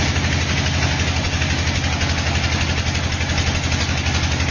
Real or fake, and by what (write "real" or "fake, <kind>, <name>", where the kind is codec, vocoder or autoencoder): real